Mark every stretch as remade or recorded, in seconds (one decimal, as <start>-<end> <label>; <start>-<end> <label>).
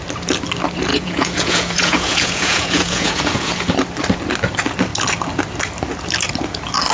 0.0-0.9 recorded; 0.9-3.7 remade; 3.7-6.9 recorded